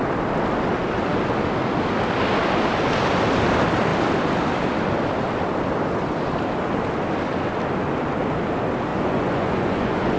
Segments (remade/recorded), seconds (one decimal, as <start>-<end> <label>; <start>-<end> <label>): 0.0-8.9 recorded; 8.9-10.2 remade